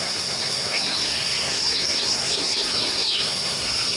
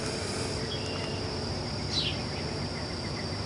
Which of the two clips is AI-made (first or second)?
first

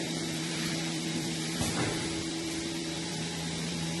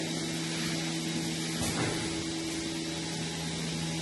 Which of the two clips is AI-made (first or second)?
first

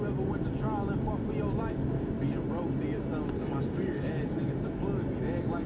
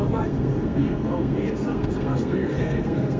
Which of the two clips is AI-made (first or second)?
second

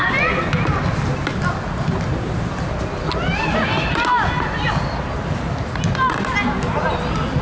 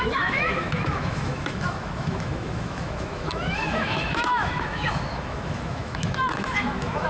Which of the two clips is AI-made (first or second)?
second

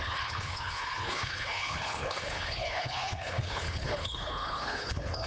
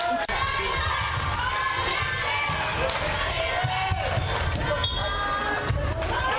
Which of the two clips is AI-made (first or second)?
first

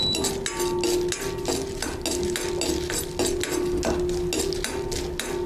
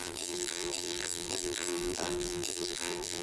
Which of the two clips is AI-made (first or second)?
second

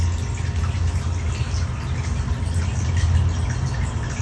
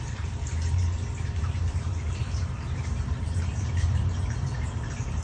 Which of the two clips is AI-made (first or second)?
second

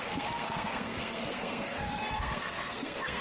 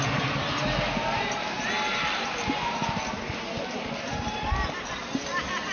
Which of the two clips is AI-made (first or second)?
first